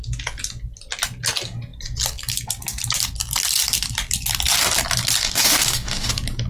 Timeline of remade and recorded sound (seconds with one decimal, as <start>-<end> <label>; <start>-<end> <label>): 0.0-5.2 recorded; 5.2-6.1 remade; 6.1-6.5 recorded